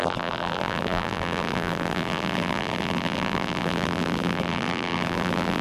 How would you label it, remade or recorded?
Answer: remade